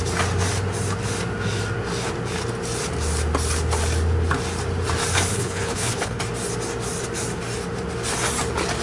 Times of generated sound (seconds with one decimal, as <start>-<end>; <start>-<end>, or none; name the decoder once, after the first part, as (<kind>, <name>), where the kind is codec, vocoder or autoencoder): 5.3-6.2 (codec, HILCodec)